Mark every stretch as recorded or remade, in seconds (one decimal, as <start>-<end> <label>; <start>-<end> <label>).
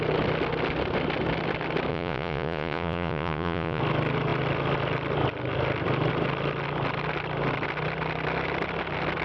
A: 0.0-1.9 recorded; 1.9-3.8 remade; 3.8-9.2 recorded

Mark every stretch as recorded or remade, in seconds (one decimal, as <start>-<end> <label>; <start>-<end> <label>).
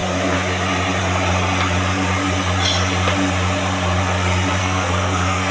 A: 0.0-4.6 recorded; 4.6-5.5 remade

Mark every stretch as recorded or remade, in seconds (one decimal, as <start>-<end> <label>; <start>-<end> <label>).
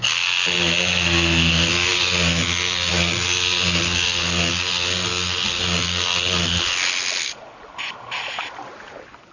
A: 0.0-9.3 recorded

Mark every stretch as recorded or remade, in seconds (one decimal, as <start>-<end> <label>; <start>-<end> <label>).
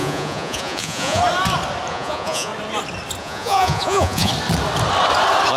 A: 0.0-1.2 remade; 1.2-1.9 recorded; 1.9-2.5 remade; 2.5-3.2 recorded; 3.2-4.3 remade; 4.3-5.6 recorded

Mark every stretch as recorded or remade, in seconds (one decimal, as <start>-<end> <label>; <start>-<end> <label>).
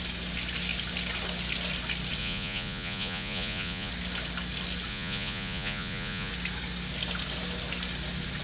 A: 0.0-2.2 recorded; 2.2-3.9 remade; 3.9-4.9 recorded; 4.9-6.3 remade; 6.3-8.4 recorded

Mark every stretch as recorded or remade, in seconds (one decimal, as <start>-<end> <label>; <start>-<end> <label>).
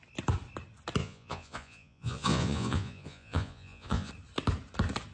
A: 0.0-1.0 recorded; 1.0-4.1 remade; 4.1-5.1 recorded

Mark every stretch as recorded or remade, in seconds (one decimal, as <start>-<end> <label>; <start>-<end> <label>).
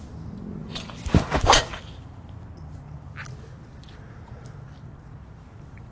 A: 0.0-0.6 recorded; 0.6-1.8 remade; 1.8-5.9 recorded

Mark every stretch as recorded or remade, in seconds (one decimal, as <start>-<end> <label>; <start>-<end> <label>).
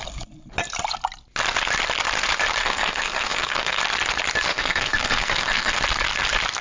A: 0.0-2.6 recorded; 2.6-3.8 remade; 3.8-4.5 recorded; 4.5-5.8 remade; 5.8-6.6 recorded